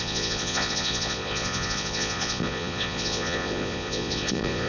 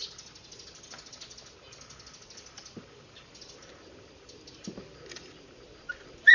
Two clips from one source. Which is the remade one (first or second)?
first